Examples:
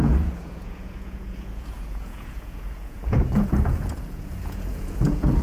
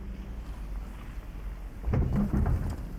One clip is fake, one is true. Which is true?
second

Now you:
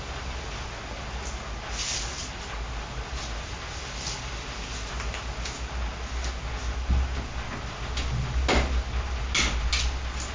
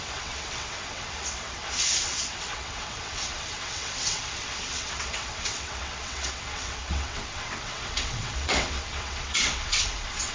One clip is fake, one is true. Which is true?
first